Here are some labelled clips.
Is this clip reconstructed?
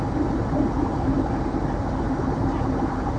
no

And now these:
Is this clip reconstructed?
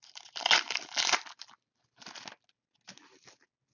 no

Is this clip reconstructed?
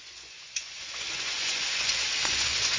yes